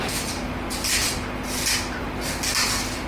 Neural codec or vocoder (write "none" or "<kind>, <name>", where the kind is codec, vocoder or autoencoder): none